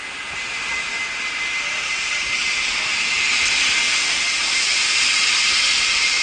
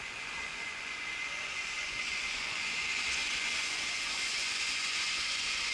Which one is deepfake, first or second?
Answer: second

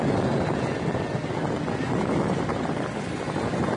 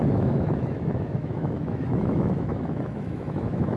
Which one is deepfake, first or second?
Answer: second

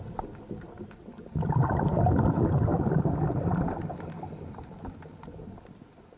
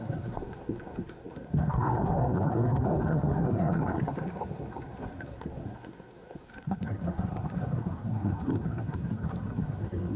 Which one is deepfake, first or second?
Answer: second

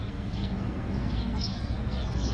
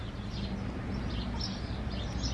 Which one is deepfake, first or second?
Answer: first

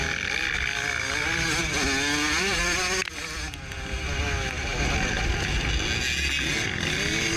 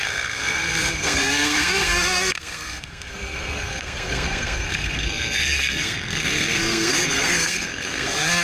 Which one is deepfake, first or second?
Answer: second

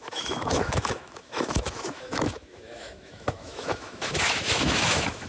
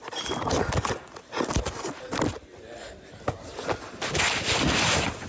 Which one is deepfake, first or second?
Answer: first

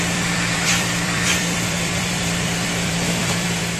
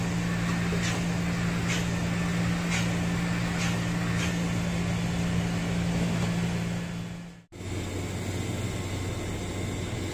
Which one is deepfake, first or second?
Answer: first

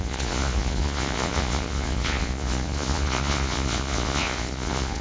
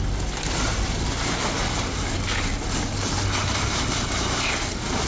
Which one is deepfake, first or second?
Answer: first